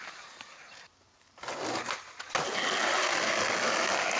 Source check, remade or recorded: recorded